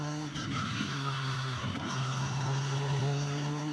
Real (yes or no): no